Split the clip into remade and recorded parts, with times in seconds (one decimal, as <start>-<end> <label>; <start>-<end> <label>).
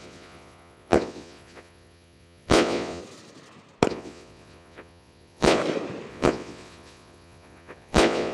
0.0-3.0 remade; 3.0-3.9 recorded; 3.9-5.6 remade; 5.6-6.1 recorded; 6.1-8.3 remade